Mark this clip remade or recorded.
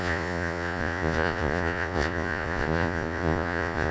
remade